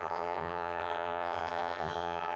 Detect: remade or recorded remade